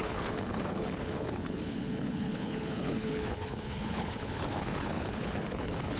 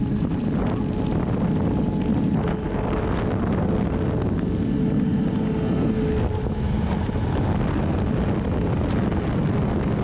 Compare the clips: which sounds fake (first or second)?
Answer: first